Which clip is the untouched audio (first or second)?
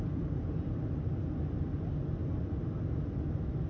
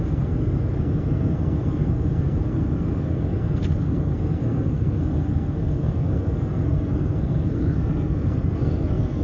first